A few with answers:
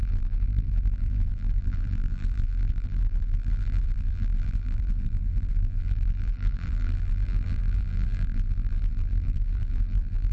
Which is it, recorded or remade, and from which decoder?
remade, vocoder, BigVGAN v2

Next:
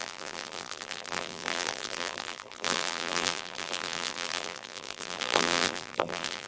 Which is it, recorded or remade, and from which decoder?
remade, vocoder, BigVGAN v2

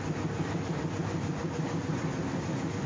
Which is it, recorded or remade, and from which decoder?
remade, vocoder, BigVGAN v2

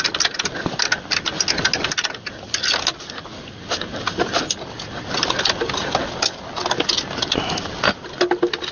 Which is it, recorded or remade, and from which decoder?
recorded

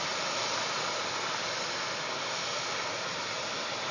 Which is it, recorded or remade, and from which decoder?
remade, vocoder, BigVGAN v2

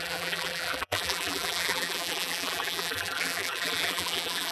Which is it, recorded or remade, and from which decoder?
remade, vocoder, BigVGAN v2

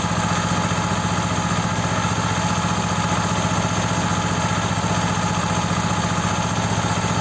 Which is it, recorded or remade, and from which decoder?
recorded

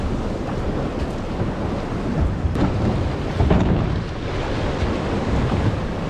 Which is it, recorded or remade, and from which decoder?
recorded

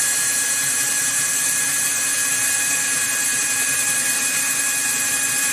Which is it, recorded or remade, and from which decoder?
remade, vocoder, BigVGAN v2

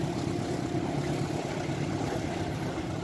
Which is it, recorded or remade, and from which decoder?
remade, vocoder, BigVGAN v2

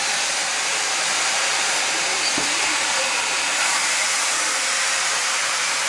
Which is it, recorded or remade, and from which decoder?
remade, vocoder, BigVGAN v2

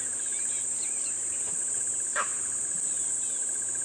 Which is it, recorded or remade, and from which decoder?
remade, vocoder, BigVGAN v2